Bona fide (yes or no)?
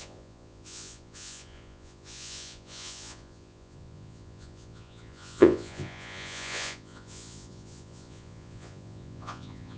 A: no